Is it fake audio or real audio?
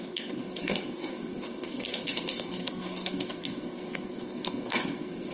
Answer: fake